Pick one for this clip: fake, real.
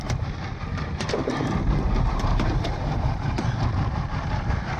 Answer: fake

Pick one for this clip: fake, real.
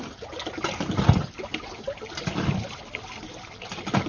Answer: real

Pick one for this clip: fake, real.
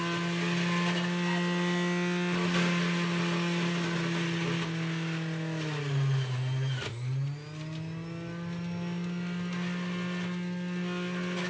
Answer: real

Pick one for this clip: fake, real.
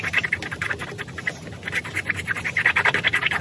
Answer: real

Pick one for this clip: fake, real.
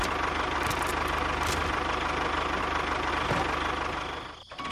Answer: real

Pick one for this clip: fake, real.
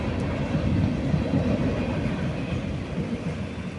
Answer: real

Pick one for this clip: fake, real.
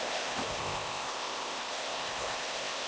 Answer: fake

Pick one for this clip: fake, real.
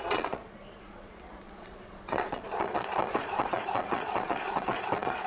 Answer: fake